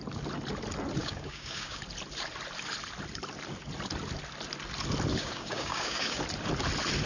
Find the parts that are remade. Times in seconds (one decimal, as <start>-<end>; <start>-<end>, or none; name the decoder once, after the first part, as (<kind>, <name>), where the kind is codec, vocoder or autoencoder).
1.0-1.8 (codec, DAC); 5.1-6.2